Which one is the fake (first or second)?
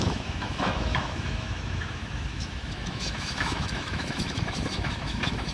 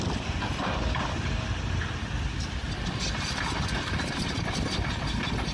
first